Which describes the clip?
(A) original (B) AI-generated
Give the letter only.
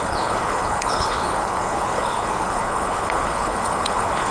B